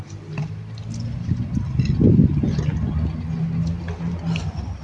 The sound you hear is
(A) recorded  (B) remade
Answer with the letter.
A